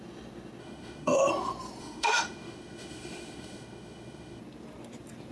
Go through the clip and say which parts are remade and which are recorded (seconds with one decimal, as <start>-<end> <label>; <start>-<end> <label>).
0.0-0.6 recorded; 0.6-1.3 remade; 1.3-1.8 recorded; 1.8-4.4 remade; 4.4-5.3 recorded